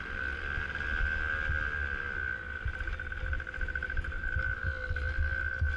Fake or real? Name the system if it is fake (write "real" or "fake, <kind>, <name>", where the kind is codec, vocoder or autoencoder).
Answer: real